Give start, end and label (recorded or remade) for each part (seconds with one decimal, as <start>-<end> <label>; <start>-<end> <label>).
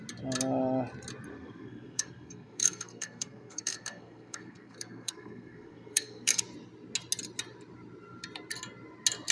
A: 0.0-1.3 recorded; 1.3-6.4 remade; 6.4-9.3 recorded